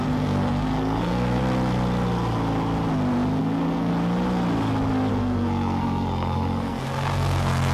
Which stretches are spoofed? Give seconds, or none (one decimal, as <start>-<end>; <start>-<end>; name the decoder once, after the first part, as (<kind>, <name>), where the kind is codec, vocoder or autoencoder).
0.0-1.4 (codec, SNAC); 3.4-3.9; 5.1-7.7